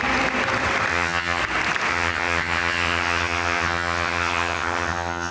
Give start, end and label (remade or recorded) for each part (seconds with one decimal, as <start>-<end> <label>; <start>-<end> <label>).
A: 0.0-0.9 recorded; 0.9-1.4 remade; 1.4-1.9 recorded; 1.9-5.3 remade